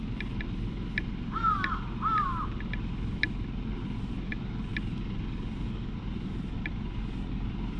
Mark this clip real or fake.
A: real